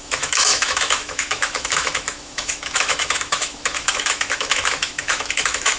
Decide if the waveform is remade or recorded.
remade